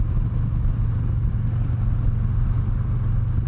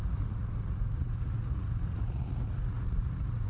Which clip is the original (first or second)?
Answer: first